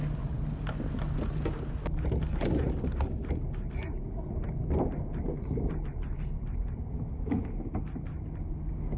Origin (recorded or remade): recorded